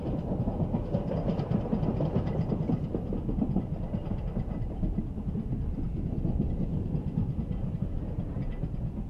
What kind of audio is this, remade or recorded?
recorded